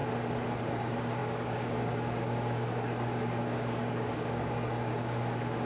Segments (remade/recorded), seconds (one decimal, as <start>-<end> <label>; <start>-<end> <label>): 0.0-0.6 recorded; 0.6-5.7 remade